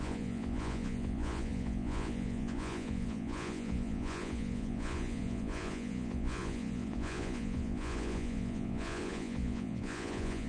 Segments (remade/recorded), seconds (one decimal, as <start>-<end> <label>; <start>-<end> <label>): 0.0-10.5 remade